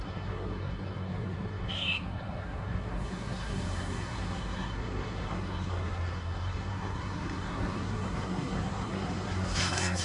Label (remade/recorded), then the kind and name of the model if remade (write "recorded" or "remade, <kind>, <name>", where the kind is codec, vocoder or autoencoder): remade, codec, SNAC